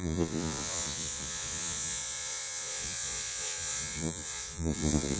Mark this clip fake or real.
fake